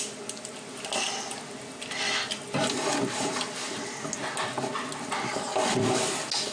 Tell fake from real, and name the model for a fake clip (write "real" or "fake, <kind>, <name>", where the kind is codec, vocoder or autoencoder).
real